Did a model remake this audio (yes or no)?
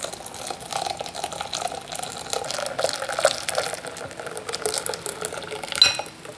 no